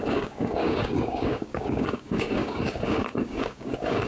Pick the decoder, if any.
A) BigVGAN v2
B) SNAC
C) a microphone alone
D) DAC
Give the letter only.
D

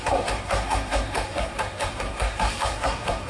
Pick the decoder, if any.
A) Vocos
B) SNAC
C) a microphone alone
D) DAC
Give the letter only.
B